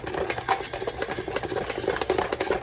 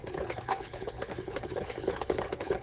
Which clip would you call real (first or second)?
first